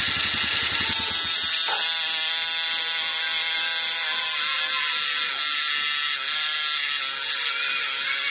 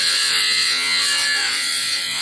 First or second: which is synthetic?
second